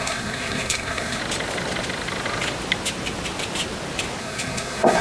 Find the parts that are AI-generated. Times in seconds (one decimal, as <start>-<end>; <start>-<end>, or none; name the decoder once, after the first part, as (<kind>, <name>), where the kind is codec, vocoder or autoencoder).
0.0-1.2 (codec, SNAC); 4.2-5.0